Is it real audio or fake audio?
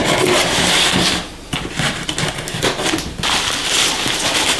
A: real